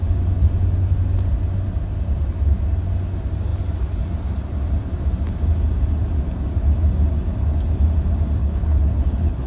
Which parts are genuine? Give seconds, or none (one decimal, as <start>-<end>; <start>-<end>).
0.0-8.4